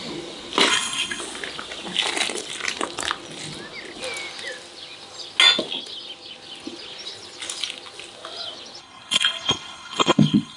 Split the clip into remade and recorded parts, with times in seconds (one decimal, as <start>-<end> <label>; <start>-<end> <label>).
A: 0.0-0.7 recorded; 0.7-1.2 remade; 1.2-8.8 recorded; 8.8-10.6 remade